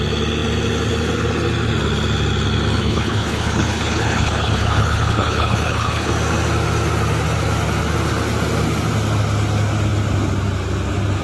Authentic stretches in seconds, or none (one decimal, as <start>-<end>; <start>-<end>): 0.0-2.8; 6.1-11.2

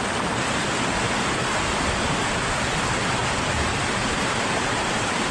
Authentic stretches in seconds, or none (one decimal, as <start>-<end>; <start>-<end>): 0.0-3.2; 3.8-5.3

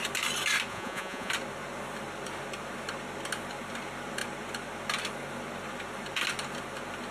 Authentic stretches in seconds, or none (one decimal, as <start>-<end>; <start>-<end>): 0.0-0.7; 1.3-7.1

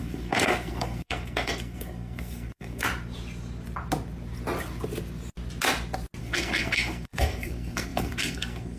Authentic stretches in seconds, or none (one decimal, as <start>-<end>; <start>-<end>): 2.9-6.2

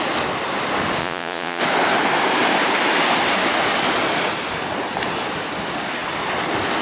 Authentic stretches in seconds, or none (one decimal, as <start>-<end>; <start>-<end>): 0.0-1.0; 1.6-6.8

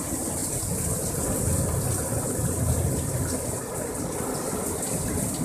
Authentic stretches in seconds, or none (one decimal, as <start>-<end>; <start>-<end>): 0.0-5.4

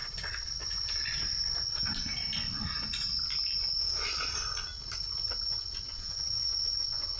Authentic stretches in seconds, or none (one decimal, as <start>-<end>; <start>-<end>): 0.0-5.5

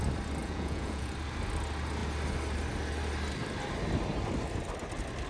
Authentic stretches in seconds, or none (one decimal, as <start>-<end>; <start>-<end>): 0.0-0.4; 1.1-5.3